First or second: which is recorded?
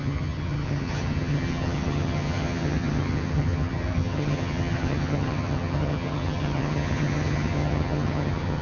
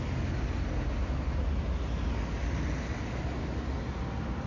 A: second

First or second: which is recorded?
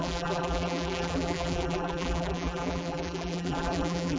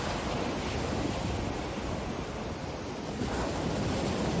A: second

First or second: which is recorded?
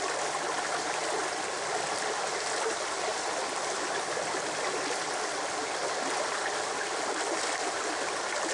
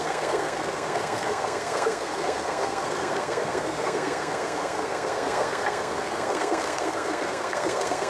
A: first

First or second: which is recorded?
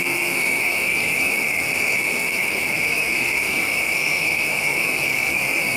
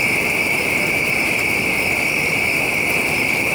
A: second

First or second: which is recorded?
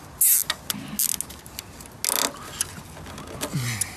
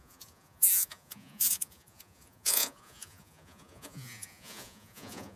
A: first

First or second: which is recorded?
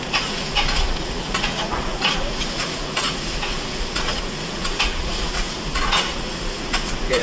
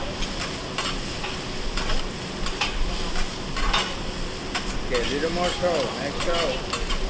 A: second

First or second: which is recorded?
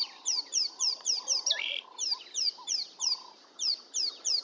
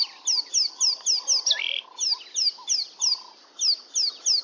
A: second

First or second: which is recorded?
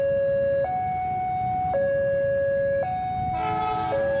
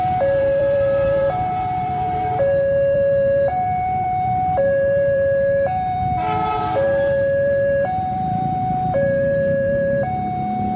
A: first